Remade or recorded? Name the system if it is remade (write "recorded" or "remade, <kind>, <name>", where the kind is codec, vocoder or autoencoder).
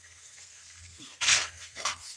remade, codec, SNAC